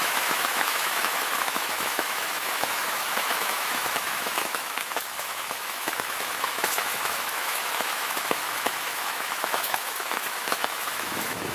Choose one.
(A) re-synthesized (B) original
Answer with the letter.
A